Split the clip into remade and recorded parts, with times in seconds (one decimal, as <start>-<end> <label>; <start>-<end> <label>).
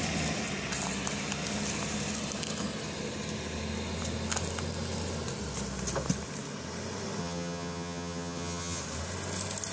0.0-7.2 recorded; 7.2-8.8 remade; 8.8-9.7 recorded